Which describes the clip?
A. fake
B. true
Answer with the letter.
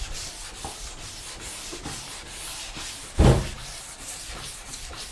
B